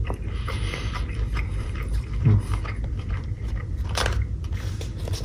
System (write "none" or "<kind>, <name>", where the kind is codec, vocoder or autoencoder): vocoder, BigVGAN v2